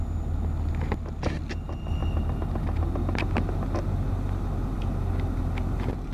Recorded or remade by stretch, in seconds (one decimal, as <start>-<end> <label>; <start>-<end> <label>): 0.0-6.1 recorded